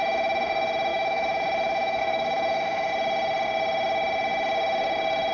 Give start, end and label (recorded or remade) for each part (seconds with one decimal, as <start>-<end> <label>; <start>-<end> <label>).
0.0-0.9 recorded; 0.9-2.9 remade; 2.9-5.3 recorded